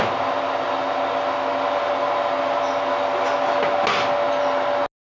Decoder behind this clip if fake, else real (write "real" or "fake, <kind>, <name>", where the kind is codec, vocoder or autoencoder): real